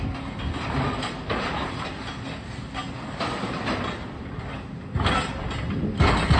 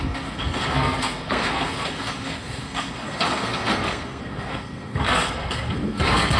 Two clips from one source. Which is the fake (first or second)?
second